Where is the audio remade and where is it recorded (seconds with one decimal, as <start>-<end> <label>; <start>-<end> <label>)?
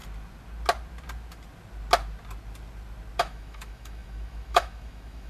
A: 0.0-3.2 recorded; 3.2-5.3 remade